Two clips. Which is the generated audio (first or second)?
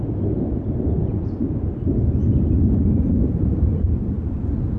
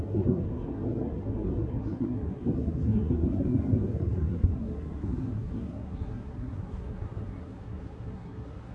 second